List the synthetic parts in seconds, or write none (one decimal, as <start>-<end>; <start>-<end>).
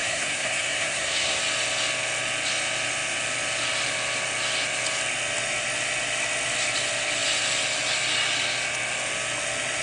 0.0-1.4